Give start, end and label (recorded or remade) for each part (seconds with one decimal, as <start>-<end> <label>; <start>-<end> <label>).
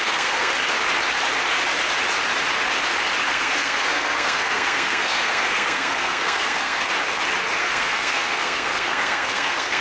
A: 0.0-0.5 remade; 0.5-3.3 recorded; 3.3-6.9 remade; 6.9-7.6 recorded; 7.6-9.8 remade